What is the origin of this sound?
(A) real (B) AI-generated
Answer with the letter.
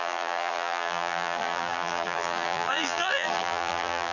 B